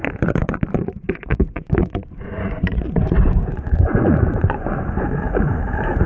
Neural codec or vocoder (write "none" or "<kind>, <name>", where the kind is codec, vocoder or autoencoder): vocoder, Vocos